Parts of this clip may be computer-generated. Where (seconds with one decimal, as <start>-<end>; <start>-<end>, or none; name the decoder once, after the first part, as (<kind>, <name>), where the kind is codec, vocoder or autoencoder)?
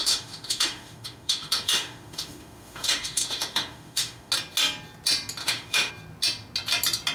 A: 0.0-4.3 (autoencoder, DAC-VAE); 5.4-5.9